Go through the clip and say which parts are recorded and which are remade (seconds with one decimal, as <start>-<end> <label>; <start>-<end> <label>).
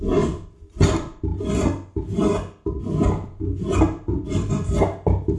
0.0-5.4 recorded